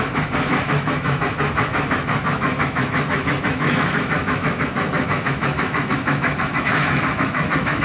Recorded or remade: remade